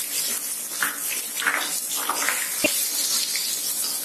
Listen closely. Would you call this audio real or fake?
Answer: real